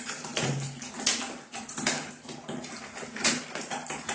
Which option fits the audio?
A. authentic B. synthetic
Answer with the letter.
A